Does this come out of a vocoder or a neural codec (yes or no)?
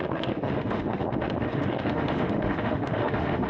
yes